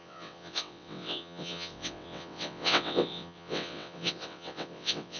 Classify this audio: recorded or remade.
remade